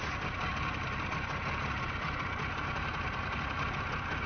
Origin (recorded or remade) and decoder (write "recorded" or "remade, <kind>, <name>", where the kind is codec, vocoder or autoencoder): recorded